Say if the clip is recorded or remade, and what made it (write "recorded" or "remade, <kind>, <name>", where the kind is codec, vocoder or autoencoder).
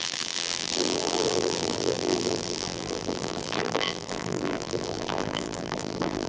remade, vocoder, BigVGAN v2